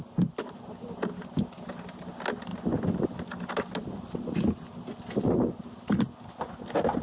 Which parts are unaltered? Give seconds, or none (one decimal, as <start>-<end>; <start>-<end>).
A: 0.0-7.0